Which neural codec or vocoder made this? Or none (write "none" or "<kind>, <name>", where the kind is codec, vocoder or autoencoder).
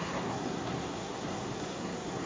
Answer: codec, SNAC